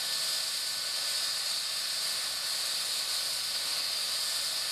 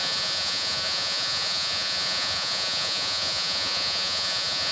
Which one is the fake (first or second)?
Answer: second